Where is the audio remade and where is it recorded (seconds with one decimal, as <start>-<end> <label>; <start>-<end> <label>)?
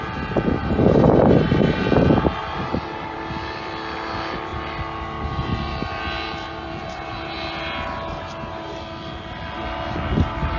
0.0-0.6 recorded; 0.6-1.5 remade; 1.5-2.4 recorded; 2.4-3.2 remade; 3.2-10.6 recorded